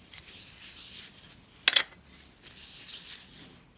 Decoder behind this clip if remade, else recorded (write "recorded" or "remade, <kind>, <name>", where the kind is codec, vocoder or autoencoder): recorded